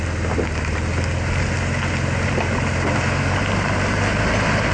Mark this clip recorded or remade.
recorded